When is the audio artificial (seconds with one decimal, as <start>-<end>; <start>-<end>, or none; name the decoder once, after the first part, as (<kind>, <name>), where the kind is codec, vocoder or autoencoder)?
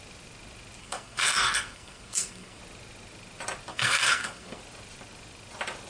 0.8-2.6 (codec, SNAC); 3.7-4.6